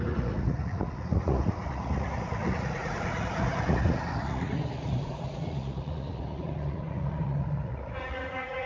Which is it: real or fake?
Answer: fake